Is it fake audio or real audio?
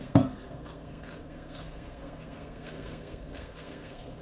fake